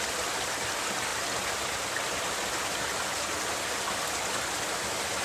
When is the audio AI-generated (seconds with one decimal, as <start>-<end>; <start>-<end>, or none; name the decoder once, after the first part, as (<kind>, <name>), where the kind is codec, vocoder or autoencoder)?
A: none